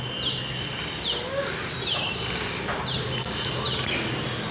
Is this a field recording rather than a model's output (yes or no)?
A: yes